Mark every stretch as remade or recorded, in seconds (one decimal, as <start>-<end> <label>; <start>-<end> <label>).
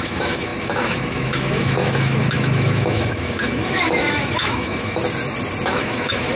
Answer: 0.0-5.0 remade; 5.0-5.7 recorded; 5.7-6.4 remade